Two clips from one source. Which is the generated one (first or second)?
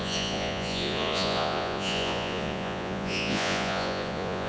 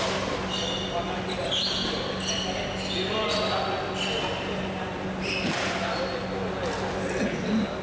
first